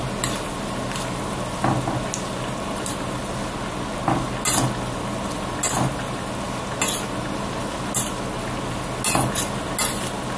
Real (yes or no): yes